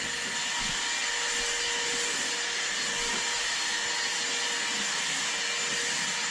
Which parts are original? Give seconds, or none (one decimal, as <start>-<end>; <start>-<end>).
0.0-6.3